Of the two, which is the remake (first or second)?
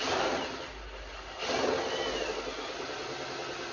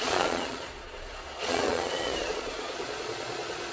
second